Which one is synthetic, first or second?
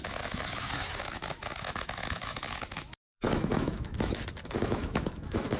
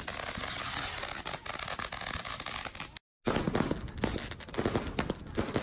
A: first